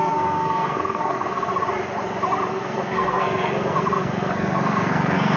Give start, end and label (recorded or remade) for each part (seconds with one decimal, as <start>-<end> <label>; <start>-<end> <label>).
0.0-1.5 remade; 1.5-2.5 recorded; 2.5-5.4 remade